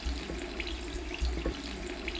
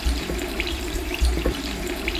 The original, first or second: first